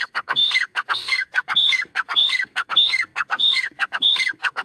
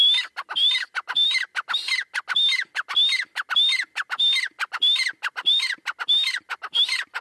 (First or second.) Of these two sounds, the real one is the second